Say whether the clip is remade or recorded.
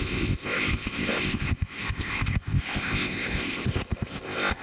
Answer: remade